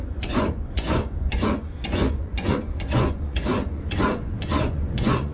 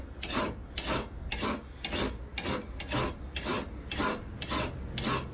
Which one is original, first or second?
second